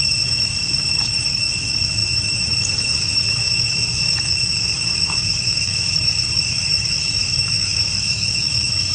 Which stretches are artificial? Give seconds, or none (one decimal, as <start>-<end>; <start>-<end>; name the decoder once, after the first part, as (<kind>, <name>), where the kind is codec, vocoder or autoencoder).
0.0-8.9 (autoencoder, DAC-VAE)